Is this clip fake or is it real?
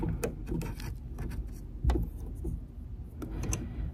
real